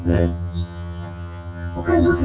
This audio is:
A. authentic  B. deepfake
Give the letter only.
B